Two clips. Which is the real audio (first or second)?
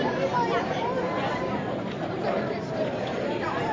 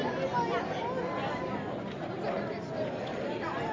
second